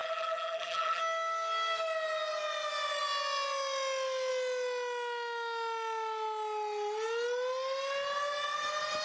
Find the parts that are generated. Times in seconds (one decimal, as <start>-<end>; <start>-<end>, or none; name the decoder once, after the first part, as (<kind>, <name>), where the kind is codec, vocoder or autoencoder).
0.0-1.0 (vocoder, BigVGAN v2)